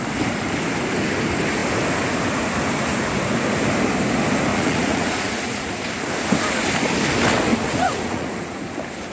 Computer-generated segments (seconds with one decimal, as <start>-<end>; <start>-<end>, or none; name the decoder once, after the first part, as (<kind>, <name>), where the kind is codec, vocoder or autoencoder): 4.5-5.8 (vocoder, Vocos); 7.5-8.7